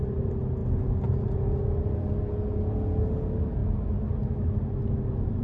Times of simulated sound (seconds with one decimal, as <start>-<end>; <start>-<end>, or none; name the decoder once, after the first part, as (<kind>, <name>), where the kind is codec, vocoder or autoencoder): none